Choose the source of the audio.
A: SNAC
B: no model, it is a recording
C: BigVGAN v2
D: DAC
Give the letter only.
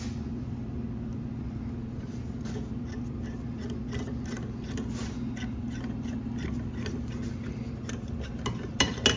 B